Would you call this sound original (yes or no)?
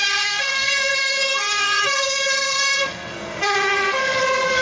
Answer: no